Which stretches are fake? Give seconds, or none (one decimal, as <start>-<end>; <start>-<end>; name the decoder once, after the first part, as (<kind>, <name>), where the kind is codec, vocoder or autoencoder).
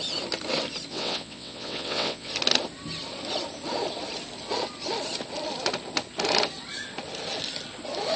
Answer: 0.9-2.3 (vocoder, WaveNeXt)